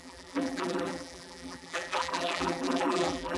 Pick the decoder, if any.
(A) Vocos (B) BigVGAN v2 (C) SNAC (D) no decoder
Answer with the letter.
B